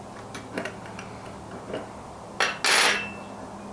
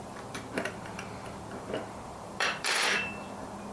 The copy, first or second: second